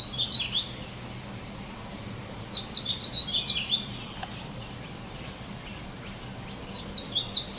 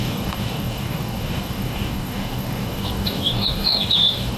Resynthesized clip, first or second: second